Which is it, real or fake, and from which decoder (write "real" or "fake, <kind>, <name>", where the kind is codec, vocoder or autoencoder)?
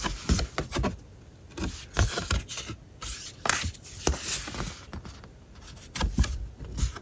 real